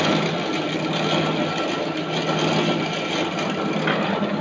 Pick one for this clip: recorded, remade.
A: recorded